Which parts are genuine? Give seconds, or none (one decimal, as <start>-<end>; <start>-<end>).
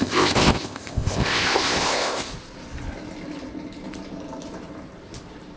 2.3-5.6